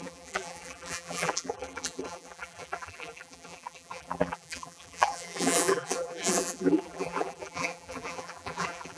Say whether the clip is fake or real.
fake